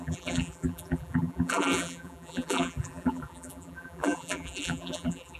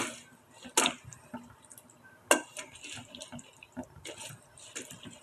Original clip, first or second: second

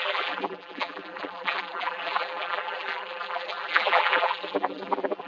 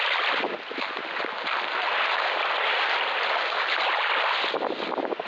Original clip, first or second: second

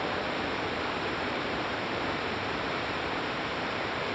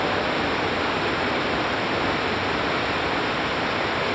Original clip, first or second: second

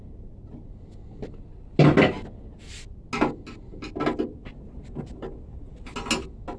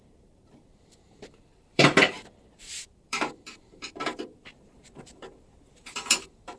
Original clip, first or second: first